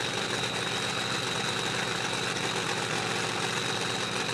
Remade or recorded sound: recorded